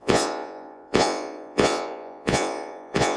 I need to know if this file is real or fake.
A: fake